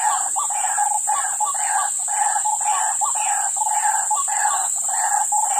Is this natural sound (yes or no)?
yes